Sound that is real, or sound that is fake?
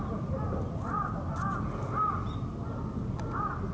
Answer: real